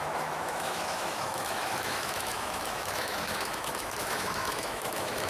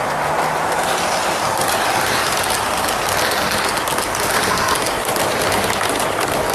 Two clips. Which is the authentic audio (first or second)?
second